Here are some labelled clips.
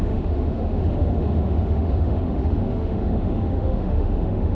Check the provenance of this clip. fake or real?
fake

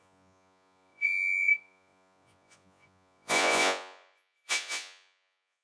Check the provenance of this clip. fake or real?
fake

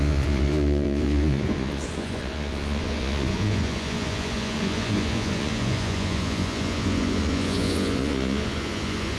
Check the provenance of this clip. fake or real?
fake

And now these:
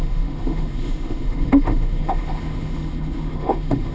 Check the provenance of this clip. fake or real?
fake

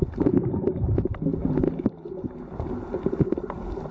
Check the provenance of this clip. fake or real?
real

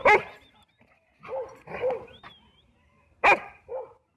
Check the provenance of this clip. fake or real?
real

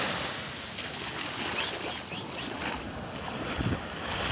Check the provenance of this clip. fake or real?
real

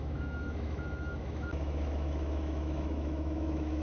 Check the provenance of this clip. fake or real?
fake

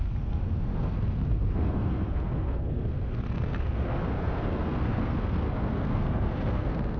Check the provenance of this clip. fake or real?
fake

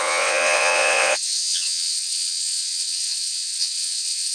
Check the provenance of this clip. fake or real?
fake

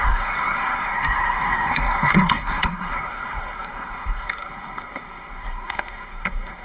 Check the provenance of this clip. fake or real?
fake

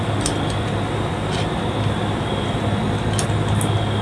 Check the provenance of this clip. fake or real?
real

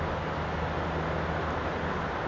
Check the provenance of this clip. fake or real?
real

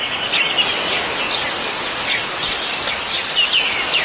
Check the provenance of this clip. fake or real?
real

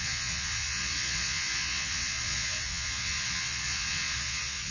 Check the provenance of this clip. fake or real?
fake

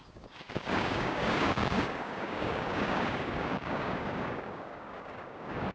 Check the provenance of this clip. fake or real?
fake